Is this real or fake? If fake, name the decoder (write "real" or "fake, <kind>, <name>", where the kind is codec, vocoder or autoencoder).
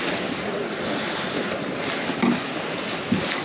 real